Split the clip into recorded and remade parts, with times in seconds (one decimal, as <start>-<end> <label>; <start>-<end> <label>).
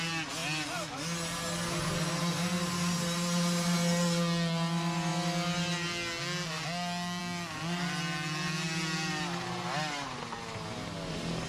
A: 0.0-11.5 recorded